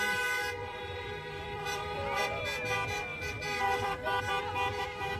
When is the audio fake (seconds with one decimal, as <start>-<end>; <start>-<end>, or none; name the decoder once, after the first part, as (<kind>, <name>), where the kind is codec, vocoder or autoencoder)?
0.6-2.4 (vocoder, BigVGAN v2); 3.1-4.2